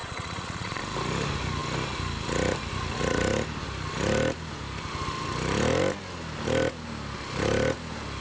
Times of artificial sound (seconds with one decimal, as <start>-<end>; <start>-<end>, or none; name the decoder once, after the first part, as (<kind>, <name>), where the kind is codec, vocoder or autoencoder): 0.0-0.8 (vocoder, Vocos)

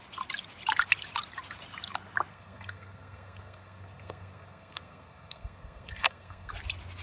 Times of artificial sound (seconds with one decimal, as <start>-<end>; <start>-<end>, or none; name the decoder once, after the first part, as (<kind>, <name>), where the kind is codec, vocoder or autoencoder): 2.3-6.5 (codec, SNAC)

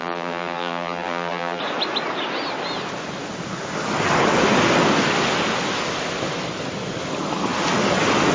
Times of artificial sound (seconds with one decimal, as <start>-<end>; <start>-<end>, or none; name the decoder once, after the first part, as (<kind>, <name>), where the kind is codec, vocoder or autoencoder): 0.0-1.6 (vocoder, BigVGAN v2)

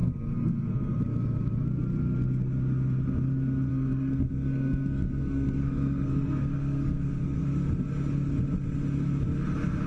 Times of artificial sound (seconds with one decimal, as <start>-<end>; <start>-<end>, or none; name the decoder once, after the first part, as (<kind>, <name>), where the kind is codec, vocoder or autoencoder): 0.0-1.0 (codec, SNAC); 3.7-7.4

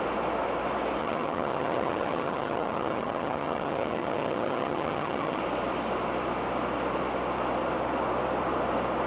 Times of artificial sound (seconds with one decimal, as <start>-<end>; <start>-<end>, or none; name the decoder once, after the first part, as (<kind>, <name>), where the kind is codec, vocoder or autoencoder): 1.0-5.4 (vocoder, HiFi-GAN)

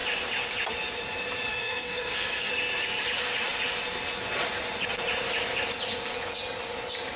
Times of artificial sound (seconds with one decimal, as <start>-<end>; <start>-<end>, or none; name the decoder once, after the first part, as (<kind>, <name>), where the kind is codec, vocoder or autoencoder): 1.5-2.5 (codec, SNAC)

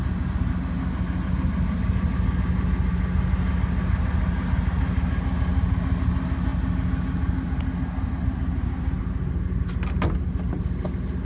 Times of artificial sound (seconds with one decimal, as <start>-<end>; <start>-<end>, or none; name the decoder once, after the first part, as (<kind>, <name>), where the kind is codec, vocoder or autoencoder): none